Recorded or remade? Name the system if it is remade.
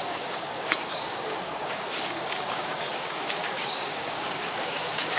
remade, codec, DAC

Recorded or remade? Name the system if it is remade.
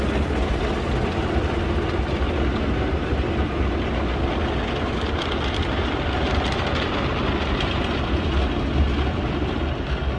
recorded